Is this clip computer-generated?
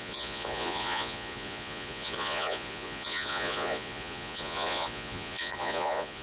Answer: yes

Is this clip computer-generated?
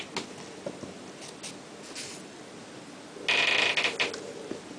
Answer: no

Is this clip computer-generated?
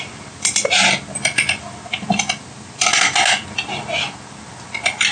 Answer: no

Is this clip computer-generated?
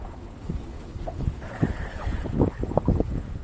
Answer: yes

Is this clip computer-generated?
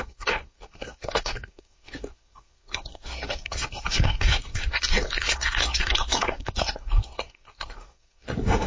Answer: yes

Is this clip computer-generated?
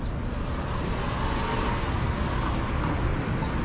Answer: no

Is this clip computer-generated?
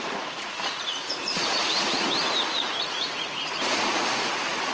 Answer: yes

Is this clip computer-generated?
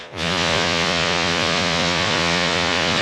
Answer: yes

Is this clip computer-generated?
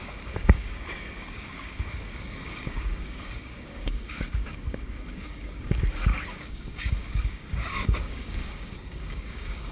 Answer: yes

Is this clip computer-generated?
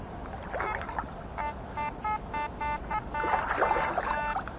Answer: no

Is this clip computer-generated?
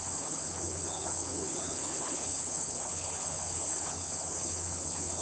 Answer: yes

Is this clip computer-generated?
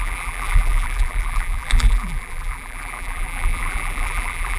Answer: yes